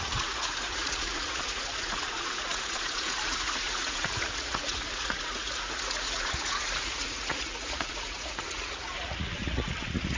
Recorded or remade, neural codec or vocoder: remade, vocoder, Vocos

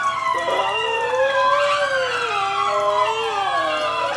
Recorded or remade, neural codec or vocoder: recorded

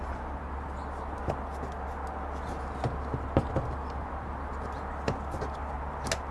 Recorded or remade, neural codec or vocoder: recorded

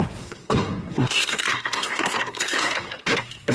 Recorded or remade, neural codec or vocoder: remade, codec, SNAC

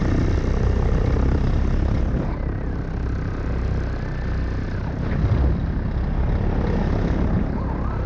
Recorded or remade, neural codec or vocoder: recorded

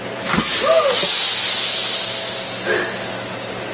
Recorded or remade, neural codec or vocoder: recorded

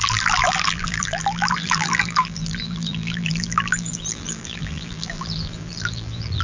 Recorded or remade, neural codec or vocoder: remade, vocoder, BigVGAN v2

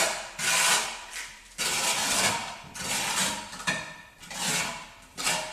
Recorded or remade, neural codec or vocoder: recorded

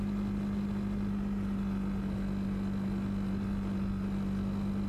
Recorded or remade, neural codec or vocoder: recorded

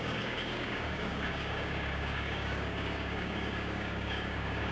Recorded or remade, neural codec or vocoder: remade, codec, DAC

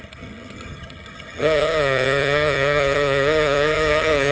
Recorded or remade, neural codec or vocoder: remade, vocoder, HiFi-GAN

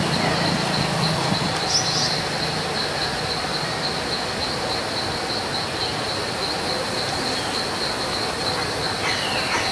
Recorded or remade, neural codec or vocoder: recorded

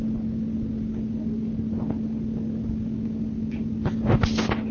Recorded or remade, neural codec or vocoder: recorded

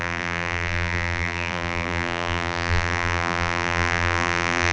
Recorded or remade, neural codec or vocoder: remade, vocoder, BigVGAN v2